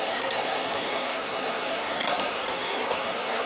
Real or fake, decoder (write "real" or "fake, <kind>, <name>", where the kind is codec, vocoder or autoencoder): fake, codec, SNAC